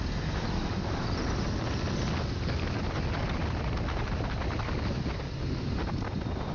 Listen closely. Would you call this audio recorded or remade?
recorded